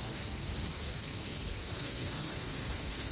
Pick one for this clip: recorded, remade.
remade